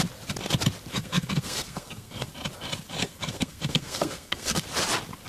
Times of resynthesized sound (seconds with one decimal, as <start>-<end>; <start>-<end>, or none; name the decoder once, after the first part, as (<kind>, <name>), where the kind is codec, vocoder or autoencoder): 0.9-2.3 (codec, SNAC); 3.0-4.6